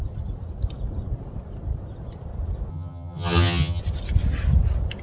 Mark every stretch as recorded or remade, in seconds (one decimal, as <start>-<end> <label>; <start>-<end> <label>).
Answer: 0.0-2.7 recorded; 2.7-3.8 remade; 3.8-5.0 recorded